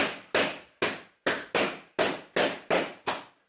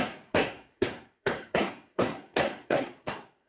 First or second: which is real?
first